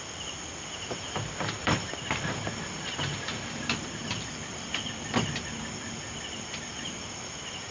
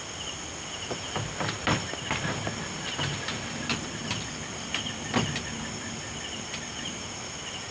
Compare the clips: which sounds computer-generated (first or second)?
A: first